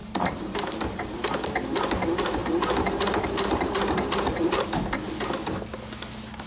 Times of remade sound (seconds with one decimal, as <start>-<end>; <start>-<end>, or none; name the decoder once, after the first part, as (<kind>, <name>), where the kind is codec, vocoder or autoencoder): 0.0-1.5 (vocoder, BigVGAN v2); 2.4-4.7